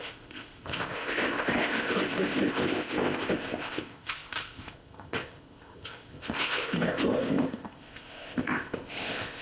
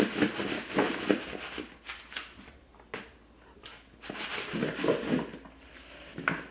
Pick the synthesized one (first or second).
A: first